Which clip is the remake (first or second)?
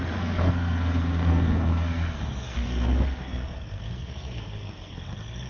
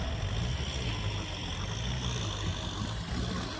first